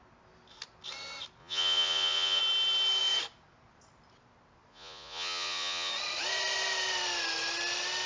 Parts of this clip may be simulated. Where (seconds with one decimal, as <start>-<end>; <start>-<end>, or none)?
1.4-2.4; 4.7-5.9